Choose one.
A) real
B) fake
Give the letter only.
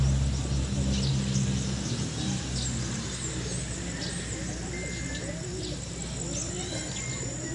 A